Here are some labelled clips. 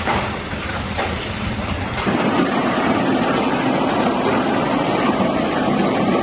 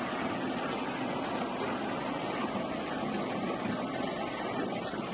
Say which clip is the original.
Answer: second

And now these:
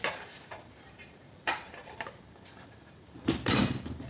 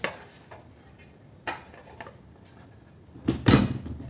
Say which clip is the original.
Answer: second